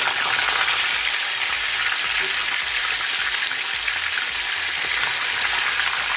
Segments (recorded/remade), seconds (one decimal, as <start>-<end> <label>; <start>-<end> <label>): 0.0-6.2 recorded